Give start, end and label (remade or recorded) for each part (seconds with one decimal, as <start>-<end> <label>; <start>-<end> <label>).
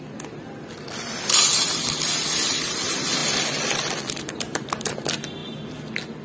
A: 0.0-6.2 recorded